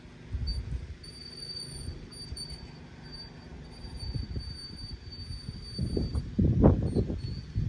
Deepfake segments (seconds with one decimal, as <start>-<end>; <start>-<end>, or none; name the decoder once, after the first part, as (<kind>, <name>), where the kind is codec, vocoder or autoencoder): 1.2-2.0 (vocoder, Vocos)